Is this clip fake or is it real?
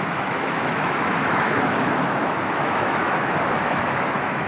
fake